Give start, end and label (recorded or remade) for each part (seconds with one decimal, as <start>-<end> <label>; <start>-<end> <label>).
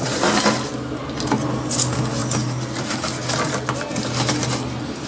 0.0-5.1 recorded